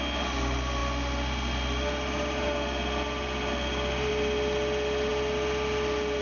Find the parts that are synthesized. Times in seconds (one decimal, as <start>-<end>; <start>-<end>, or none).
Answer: none